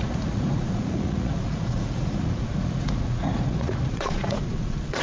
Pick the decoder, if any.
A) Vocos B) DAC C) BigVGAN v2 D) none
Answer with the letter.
A